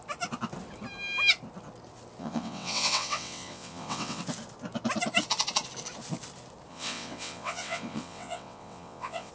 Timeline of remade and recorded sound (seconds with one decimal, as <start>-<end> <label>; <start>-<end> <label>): 0.0-2.2 recorded; 2.2-4.2 remade; 4.2-6.7 recorded; 6.7-9.3 remade